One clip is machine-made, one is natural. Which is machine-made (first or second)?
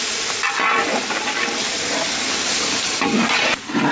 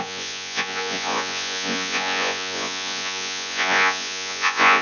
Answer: second